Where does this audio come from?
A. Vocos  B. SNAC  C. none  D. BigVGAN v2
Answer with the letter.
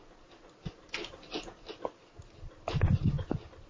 C